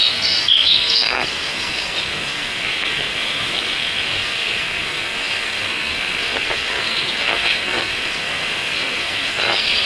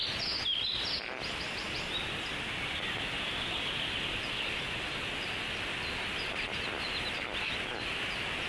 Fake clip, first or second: first